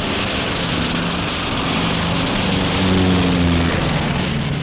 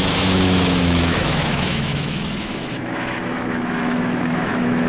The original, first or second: first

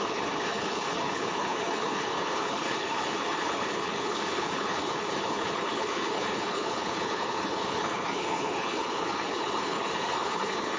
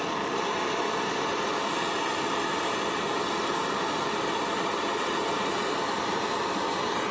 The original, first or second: second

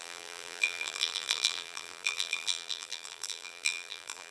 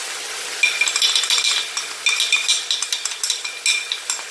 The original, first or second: second